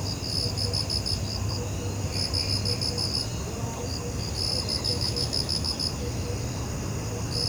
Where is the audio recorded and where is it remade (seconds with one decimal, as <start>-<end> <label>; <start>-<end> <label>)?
0.0-4.9 recorded; 4.9-5.7 remade; 5.7-7.5 recorded